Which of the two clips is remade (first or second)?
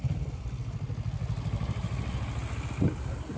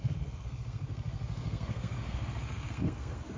second